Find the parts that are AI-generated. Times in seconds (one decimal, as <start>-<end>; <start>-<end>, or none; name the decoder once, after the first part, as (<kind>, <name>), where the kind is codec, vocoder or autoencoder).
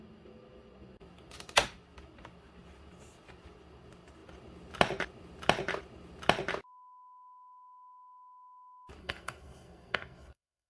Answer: 9.0-10.7 (codec, SNAC)